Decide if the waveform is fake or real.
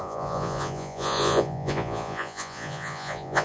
fake